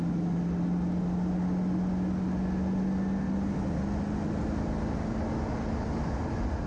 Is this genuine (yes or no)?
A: yes